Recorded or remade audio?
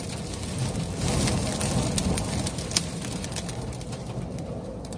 recorded